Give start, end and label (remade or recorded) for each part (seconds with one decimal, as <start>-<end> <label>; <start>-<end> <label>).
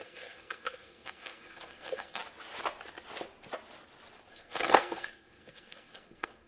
0.0-2.2 remade; 2.2-4.3 recorded; 4.3-6.5 remade